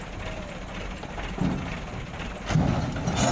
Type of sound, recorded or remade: recorded